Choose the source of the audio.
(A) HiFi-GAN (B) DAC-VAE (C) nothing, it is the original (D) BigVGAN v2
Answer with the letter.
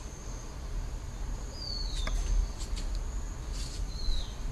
C